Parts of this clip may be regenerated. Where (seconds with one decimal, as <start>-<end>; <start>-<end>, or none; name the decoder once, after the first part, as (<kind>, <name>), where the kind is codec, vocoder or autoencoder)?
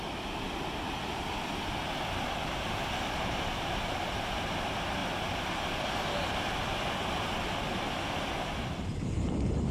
none